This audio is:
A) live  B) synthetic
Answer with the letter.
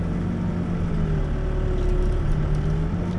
A